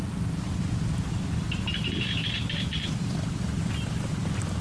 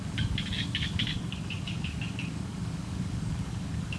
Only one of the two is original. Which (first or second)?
first